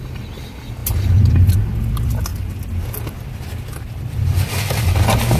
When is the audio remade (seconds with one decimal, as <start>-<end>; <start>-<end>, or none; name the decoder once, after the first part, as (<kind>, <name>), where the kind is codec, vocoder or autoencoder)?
none